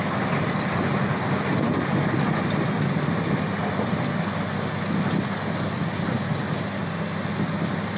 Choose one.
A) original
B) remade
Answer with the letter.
A